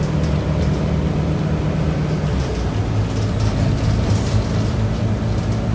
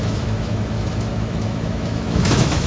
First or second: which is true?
first